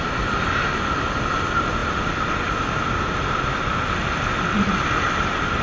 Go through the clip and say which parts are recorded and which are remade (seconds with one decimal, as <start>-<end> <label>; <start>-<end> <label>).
0.0-5.6 recorded

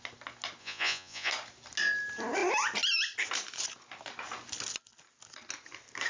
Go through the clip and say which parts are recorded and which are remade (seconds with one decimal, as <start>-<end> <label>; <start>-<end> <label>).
0.0-0.6 recorded; 0.6-1.3 remade; 1.3-6.1 recorded

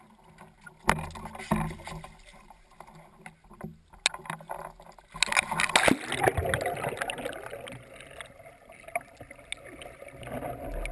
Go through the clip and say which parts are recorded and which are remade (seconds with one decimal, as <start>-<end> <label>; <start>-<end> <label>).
0.0-10.9 recorded

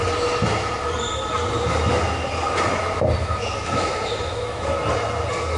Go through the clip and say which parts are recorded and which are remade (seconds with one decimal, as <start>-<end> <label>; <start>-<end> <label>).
0.0-3.2 recorded; 3.2-4.6 remade; 4.6-5.6 recorded

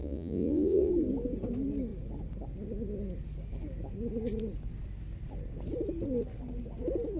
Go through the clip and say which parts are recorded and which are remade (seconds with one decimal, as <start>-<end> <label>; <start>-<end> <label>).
0.0-0.9 remade; 0.9-7.2 recorded